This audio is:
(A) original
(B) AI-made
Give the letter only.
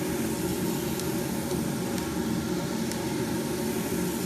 A